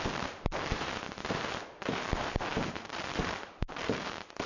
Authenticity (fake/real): fake